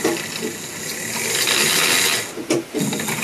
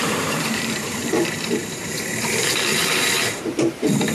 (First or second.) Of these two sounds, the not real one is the second